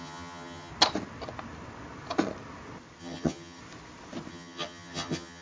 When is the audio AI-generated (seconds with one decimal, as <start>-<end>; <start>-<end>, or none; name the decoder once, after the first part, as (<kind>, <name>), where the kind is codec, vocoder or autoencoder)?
0.0-0.7 (vocoder, HiFi-GAN); 3.0-3.6; 4.3-5.4